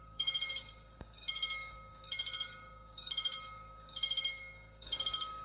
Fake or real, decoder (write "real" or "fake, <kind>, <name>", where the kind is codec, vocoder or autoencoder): fake, codec, DAC